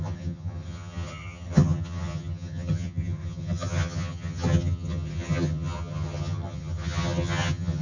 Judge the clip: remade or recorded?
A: remade